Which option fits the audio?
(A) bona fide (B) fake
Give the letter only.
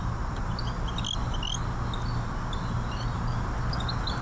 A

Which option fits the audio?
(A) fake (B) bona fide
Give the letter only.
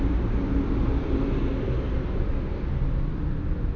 B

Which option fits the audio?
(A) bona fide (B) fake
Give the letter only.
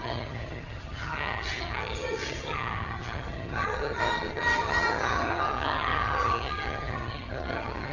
B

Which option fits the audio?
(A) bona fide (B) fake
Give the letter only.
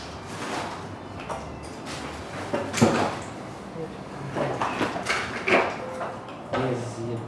A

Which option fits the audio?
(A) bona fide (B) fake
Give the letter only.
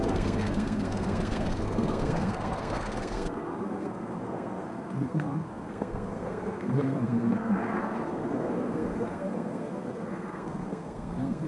B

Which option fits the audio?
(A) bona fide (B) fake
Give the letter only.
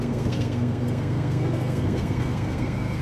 B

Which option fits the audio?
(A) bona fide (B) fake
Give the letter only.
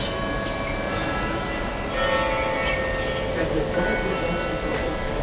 A